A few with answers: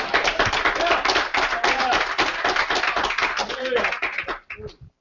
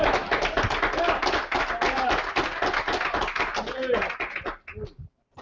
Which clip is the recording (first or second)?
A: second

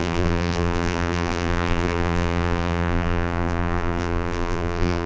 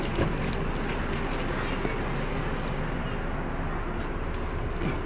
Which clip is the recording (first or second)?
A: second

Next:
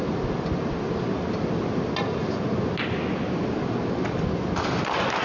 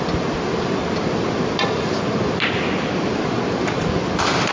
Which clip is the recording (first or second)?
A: first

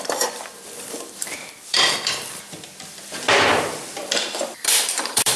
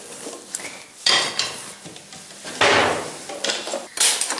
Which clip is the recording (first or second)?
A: second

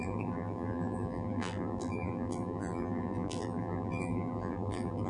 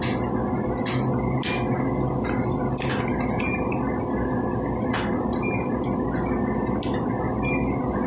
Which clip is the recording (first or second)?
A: second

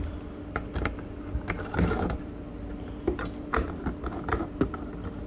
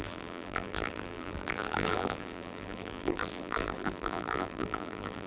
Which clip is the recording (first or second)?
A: first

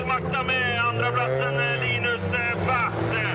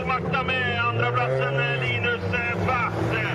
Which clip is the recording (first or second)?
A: first